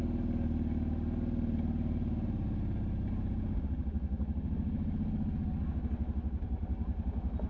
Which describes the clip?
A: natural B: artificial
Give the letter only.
A